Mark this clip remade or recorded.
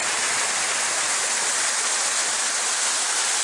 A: recorded